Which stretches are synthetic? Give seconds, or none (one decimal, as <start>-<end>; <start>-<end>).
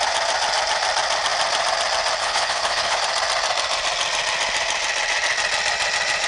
2.2-3.0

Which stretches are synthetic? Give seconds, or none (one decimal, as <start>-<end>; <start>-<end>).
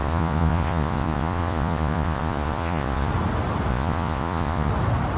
0.0-3.1; 3.7-4.7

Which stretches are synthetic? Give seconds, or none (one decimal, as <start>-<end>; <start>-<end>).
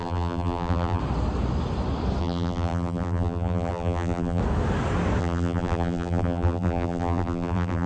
0.0-1.0; 2.2-4.4; 5.2-7.9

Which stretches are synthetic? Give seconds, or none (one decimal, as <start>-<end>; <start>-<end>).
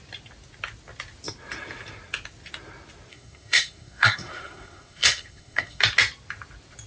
3.1-5.8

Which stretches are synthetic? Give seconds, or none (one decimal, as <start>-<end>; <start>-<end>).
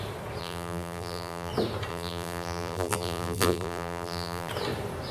0.4-1.5; 1.9-4.5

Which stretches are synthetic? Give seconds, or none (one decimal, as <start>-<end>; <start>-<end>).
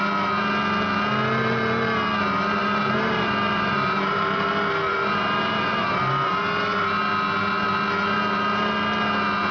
2.6-4.5; 4.9-6.0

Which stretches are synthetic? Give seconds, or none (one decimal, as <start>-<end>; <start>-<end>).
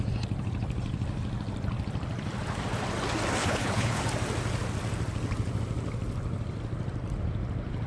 3.4-4.0